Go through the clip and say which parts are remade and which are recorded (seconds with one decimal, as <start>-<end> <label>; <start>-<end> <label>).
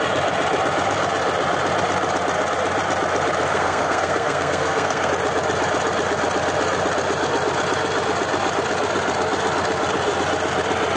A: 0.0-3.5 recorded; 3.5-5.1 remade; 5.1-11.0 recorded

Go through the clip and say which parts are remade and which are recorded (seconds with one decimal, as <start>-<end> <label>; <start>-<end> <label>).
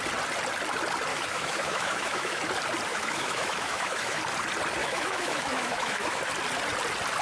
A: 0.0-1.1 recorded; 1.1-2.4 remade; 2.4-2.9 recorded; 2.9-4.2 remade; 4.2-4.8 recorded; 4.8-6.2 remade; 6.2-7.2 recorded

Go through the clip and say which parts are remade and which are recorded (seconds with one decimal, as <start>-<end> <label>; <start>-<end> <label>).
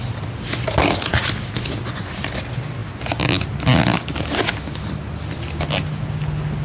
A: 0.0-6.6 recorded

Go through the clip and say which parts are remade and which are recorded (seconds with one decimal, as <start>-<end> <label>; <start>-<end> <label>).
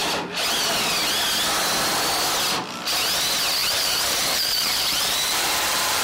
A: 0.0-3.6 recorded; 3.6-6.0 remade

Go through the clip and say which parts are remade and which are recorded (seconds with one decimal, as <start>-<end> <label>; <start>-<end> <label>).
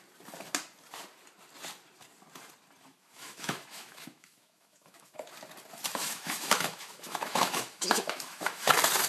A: 0.0-2.9 recorded; 2.9-5.3 remade; 5.3-6.0 recorded; 6.0-8.7 remade; 8.7-9.1 recorded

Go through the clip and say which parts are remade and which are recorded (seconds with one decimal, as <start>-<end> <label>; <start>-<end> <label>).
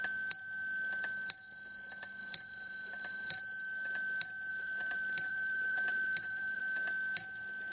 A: 0.0-2.2 recorded; 2.2-3.4 remade; 3.4-4.5 recorded; 4.5-6.6 remade; 6.6-7.7 recorded